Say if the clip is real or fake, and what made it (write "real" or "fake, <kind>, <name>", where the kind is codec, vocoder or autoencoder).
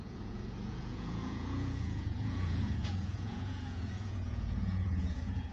fake, vocoder, Vocos